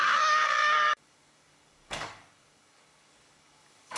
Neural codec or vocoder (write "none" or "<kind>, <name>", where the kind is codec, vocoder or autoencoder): codec, DAC